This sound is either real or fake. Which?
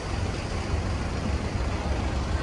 fake